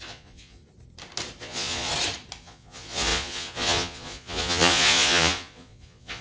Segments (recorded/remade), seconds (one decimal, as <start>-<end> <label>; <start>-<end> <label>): 0.0-0.6 remade; 0.6-1.4 recorded; 1.4-1.9 remade; 1.9-2.4 recorded; 2.4-6.2 remade